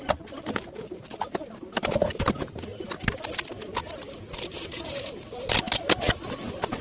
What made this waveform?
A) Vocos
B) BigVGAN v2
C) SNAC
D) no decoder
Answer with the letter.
D